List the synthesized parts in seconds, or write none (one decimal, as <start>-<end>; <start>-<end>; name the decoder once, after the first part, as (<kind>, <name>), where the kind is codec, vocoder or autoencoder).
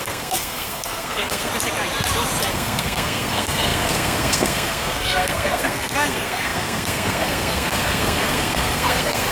0.0-1.5 (codec, SNAC); 2.5-9.3